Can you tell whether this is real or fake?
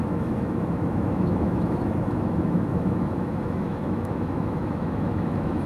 fake